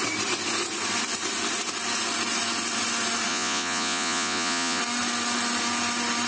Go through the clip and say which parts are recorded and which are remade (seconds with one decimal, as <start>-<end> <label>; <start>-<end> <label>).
0.0-3.3 recorded; 3.3-4.8 remade; 4.8-6.3 recorded